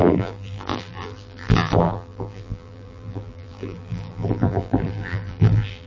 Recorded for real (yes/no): no